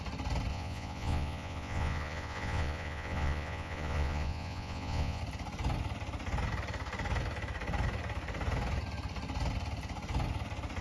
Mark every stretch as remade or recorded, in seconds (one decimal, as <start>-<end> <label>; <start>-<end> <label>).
0.0-0.5 recorded; 0.5-5.2 remade; 5.2-10.8 recorded